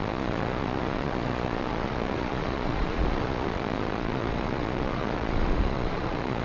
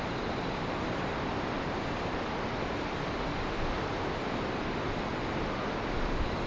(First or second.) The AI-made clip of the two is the first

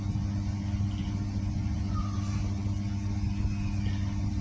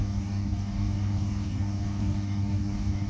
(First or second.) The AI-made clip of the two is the second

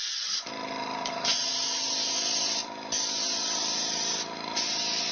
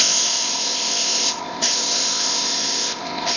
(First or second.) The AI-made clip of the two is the second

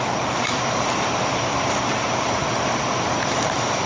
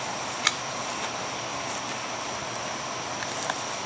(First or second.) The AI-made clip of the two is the first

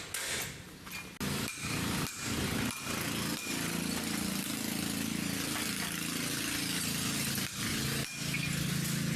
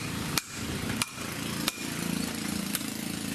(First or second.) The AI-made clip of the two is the second